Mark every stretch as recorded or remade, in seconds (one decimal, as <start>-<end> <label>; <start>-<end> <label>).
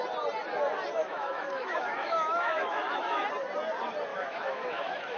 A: 0.0-1.0 recorded; 1.0-3.2 remade; 3.2-4.1 recorded; 4.1-5.2 remade